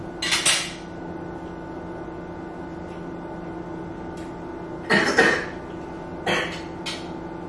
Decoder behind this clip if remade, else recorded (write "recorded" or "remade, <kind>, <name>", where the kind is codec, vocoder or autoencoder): recorded